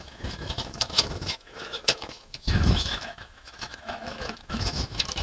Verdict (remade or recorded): remade